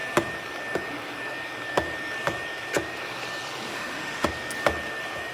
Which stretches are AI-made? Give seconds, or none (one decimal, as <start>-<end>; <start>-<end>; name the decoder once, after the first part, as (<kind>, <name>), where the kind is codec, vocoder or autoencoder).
3.7-4.3 (autoencoder, DAC-VAE)